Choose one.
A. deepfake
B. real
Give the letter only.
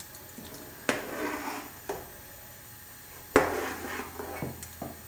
B